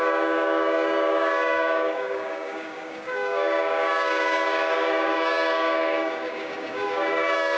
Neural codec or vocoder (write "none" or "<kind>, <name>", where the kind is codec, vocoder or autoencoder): codec, DAC